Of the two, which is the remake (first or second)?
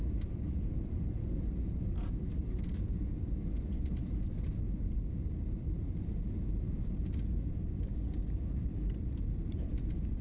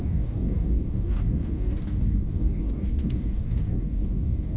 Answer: second